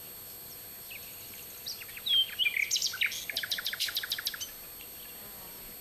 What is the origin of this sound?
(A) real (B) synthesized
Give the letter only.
A